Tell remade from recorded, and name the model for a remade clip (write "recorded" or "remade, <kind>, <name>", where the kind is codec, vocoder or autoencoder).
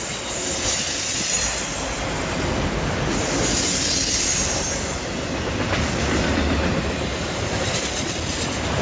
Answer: recorded